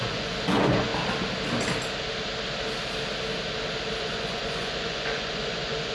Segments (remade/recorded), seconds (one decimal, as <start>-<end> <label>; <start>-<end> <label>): 0.0-0.9 remade; 0.9-4.0 recorded; 4.0-5.9 remade